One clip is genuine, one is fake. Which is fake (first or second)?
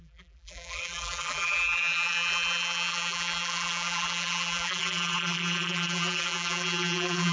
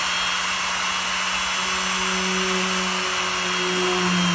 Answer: first